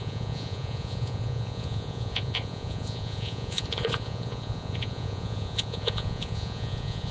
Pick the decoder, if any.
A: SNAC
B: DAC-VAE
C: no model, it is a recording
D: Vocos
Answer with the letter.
D